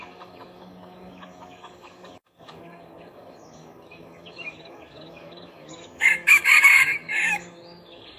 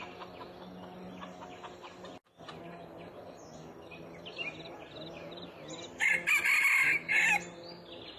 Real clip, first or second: second